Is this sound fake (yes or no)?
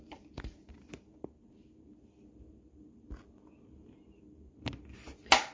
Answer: no